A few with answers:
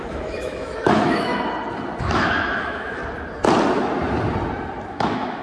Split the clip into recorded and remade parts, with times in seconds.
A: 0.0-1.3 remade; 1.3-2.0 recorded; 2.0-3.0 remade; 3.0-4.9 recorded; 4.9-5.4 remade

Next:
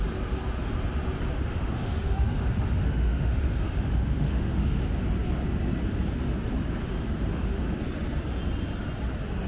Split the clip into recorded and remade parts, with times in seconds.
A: 0.0-1.4 recorded; 1.4-4.8 remade; 4.8-6.8 recorded; 6.8-7.6 remade; 7.6-9.5 recorded

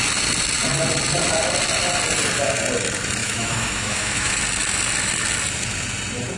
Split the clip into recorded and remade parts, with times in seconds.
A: 0.0-3.2 recorded; 3.2-4.4 remade; 4.4-6.4 recorded

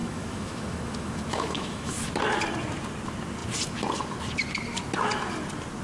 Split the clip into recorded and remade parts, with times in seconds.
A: 0.0-2.0 remade; 2.0-5.8 recorded

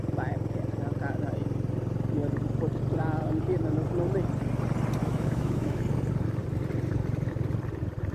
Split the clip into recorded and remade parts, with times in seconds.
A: 0.0-5.0 recorded; 5.0-5.8 remade; 5.8-8.1 recorded